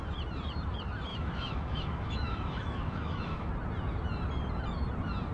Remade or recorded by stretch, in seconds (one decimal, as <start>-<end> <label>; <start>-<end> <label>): 0.0-1.1 recorded; 1.1-3.5 remade; 3.5-5.3 recorded